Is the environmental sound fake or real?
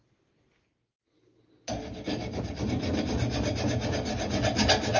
real